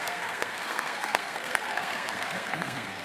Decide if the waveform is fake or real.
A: fake